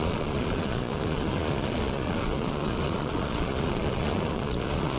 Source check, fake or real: fake